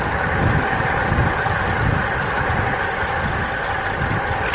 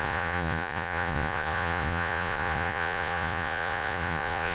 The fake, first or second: second